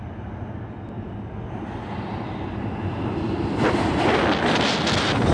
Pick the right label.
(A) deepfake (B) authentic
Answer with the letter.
B